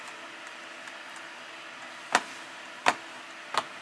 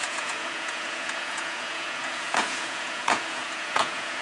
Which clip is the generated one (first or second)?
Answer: second